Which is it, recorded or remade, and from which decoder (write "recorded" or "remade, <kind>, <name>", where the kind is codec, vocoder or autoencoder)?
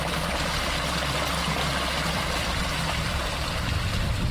recorded